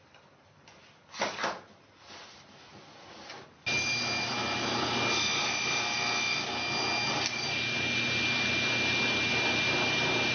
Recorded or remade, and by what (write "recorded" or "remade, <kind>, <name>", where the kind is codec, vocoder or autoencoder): recorded